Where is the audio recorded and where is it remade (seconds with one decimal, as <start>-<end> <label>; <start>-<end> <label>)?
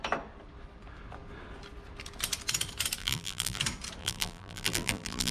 0.0-3.0 recorded; 3.0-3.6 remade; 3.6-4.0 recorded; 4.0-5.3 remade